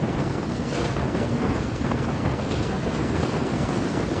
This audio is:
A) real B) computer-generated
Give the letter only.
B